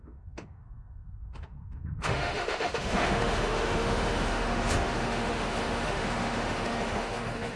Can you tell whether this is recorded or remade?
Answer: remade